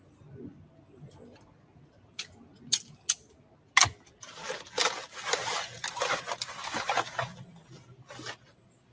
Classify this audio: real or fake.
real